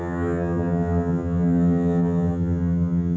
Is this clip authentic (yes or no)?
no